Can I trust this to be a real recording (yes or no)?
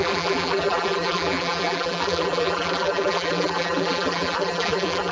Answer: no